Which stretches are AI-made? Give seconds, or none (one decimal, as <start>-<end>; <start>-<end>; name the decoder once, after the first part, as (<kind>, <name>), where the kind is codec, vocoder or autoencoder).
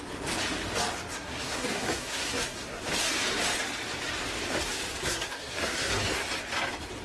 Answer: 1.1-2.8 (codec, SNAC); 5.0-5.9